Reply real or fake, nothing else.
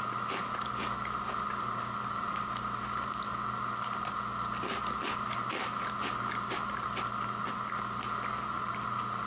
real